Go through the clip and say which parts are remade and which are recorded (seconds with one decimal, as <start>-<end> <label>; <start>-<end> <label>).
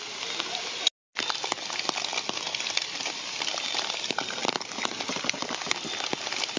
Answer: 0.0-6.6 recorded